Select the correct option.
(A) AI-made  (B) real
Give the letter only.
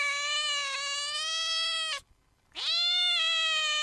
B